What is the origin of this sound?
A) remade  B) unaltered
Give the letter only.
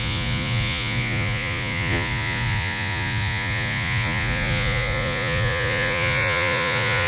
A